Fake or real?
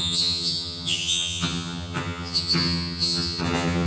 fake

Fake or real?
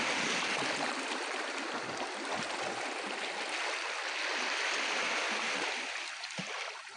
real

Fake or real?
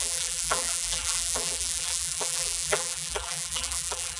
fake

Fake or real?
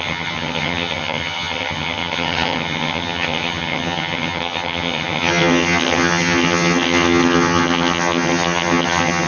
fake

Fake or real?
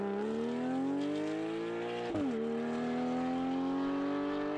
real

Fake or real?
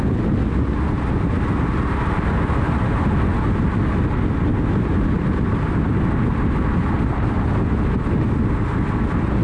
real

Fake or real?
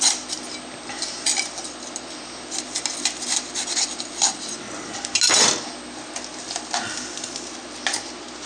real